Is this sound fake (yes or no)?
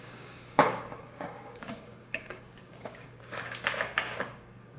yes